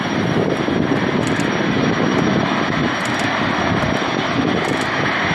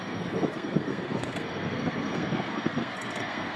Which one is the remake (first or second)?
second